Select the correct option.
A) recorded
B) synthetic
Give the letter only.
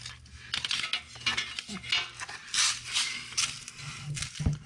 A